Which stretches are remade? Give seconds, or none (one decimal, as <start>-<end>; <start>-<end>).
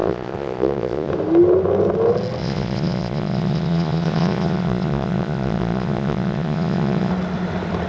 0.0-1.1; 2.4-7.1